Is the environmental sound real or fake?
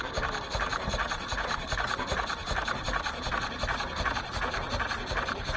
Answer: fake